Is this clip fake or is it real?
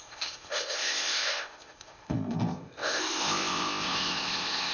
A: fake